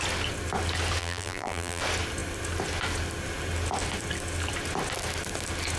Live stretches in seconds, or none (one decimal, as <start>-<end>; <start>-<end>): 0.0-1.0; 1.8-5.8

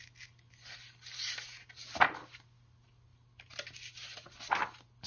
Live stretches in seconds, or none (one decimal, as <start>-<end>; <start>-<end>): 0.0-5.1